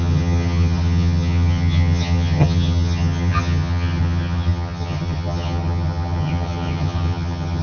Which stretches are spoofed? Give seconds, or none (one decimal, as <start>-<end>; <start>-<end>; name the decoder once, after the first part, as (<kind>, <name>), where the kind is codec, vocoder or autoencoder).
0.0-7.6 (vocoder, HiFi-GAN)